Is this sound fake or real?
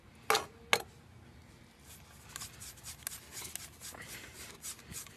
real